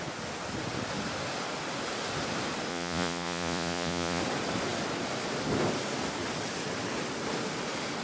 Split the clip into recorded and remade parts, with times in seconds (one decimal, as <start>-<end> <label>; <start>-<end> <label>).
0.0-2.7 recorded; 2.7-4.2 remade; 4.2-8.0 recorded